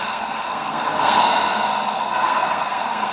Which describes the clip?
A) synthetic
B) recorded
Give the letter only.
A